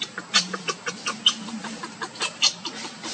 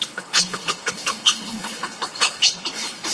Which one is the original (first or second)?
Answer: first